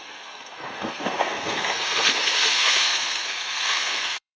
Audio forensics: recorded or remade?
remade